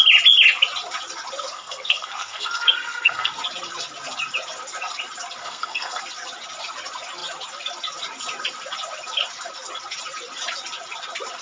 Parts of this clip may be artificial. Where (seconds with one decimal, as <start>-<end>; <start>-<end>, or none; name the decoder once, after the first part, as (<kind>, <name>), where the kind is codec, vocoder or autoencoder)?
1.5-3.3 (codec, SNAC); 5.4-6.0